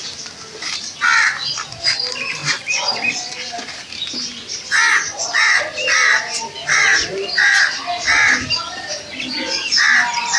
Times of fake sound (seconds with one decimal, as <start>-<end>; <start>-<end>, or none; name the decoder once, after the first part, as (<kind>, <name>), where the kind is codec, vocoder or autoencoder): 6.9-7.8 (vocoder, BigVGAN v2)